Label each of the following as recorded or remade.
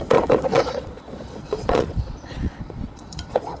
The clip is remade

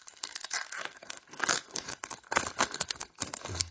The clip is remade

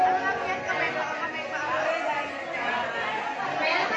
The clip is recorded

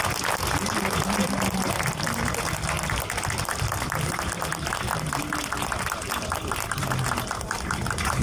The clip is recorded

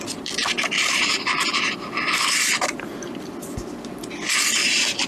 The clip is recorded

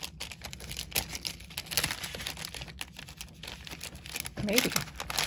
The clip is recorded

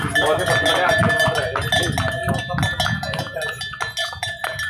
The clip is recorded